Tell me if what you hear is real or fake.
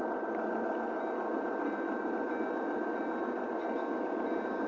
real